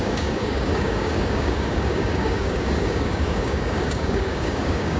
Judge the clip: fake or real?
fake